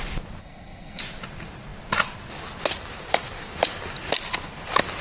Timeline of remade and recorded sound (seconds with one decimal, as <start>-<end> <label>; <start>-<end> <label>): 0.0-0.4 recorded; 0.4-1.0 remade; 1.0-5.0 recorded